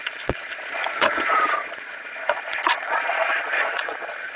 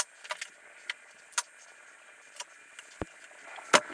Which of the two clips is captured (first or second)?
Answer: second